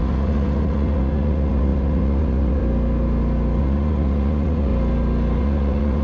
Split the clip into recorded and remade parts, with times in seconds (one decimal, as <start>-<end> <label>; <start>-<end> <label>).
0.0-2.6 remade; 2.6-3.6 recorded; 3.6-4.7 remade; 4.7-5.4 recorded; 5.4-6.0 remade